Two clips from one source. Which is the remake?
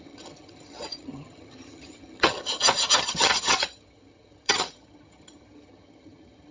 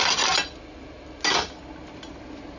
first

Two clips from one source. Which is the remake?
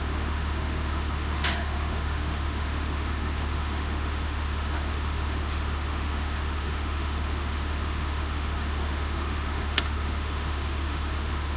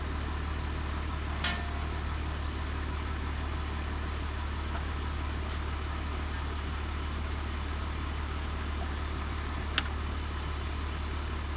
first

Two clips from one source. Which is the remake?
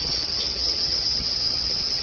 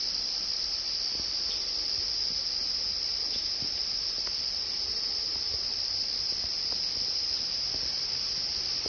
first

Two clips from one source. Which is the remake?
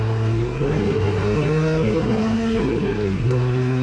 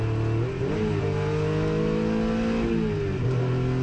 first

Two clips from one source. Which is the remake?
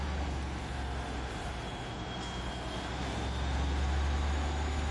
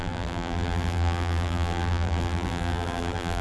second